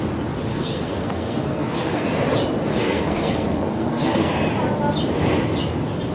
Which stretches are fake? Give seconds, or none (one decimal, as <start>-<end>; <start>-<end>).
0.5-2.1; 2.7-4.3